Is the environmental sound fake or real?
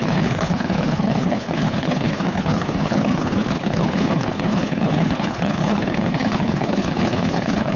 fake